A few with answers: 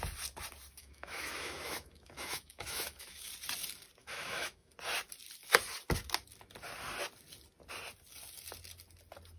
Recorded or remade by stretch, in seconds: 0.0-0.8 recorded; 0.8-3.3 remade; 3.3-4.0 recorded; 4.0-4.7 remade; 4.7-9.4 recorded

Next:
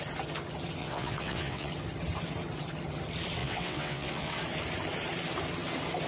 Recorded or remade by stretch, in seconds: 0.0-0.8 recorded; 0.8-1.7 remade; 1.7-3.4 recorded; 3.4-4.4 remade; 4.4-6.1 recorded

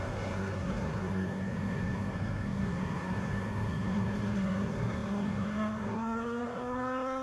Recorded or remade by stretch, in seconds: 0.0-7.2 remade

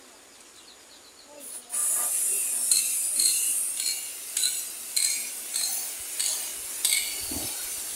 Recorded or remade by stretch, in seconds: 0.0-8.0 recorded